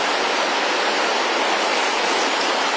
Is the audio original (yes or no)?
yes